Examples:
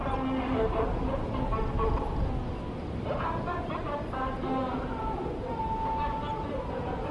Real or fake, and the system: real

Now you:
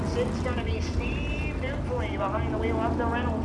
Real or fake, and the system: real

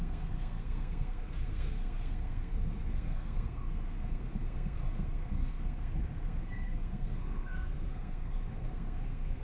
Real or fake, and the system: fake, codec, SNAC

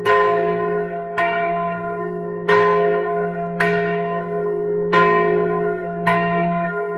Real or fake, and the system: fake, codec, SNAC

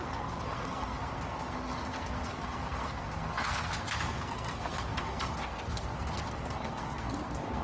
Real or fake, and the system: fake, codec, SNAC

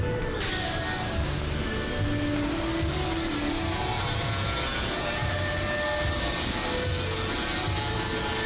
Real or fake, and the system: real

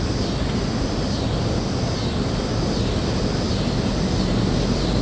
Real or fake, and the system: real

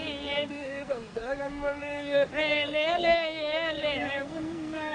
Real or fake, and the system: fake, codec, SNAC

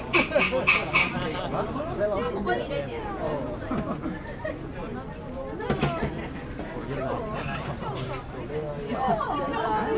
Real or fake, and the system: real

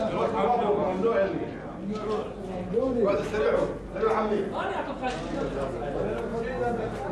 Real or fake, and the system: real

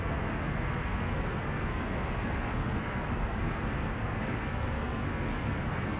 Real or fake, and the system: fake, codec, SNAC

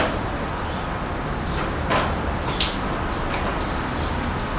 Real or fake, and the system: real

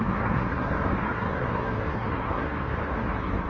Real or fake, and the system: fake, codec, SNAC